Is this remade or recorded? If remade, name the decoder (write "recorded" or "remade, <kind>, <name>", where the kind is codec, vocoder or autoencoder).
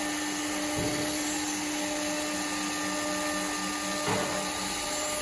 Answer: recorded